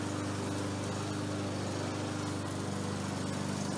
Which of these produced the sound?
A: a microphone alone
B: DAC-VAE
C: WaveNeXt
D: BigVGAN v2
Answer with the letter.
A